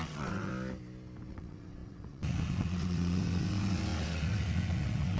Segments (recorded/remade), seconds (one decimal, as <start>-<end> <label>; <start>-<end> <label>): 0.0-0.5 remade; 0.5-1.3 recorded; 1.3-5.2 remade